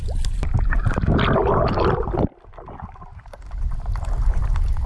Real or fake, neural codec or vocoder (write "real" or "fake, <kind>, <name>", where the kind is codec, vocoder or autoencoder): real